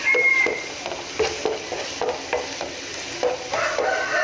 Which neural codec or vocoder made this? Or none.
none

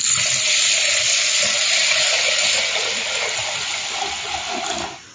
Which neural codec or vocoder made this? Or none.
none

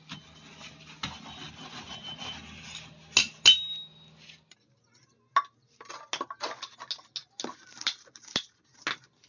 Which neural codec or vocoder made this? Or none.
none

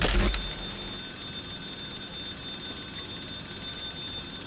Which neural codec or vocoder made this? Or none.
none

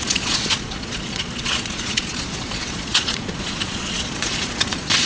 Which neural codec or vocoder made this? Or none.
vocoder, Vocos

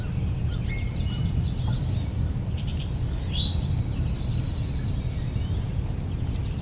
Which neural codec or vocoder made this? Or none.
none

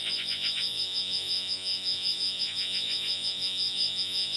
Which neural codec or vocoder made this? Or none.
vocoder, Vocos